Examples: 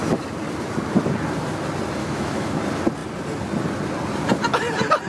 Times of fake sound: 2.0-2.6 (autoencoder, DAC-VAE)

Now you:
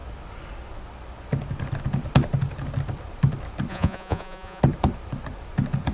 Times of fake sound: 3.7-4.6 (vocoder, Vocos)

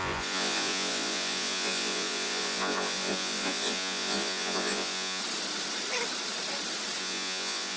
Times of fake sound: 0.0-5.2 (vocoder, Vocos); 7.0-7.8